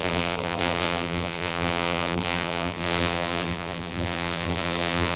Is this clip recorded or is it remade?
remade